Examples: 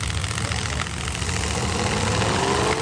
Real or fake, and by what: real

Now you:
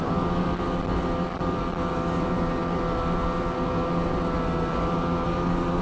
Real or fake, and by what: real